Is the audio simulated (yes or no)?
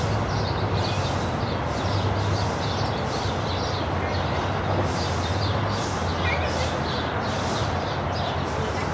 no